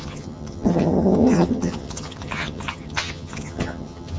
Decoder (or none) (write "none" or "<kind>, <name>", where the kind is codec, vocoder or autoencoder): vocoder, HiFi-GAN